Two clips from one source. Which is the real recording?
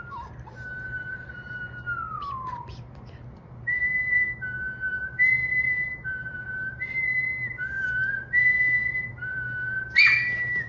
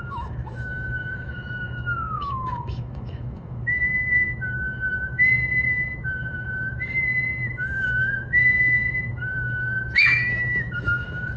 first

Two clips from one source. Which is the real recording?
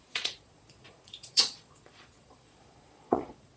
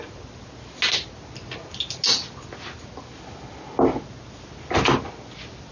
second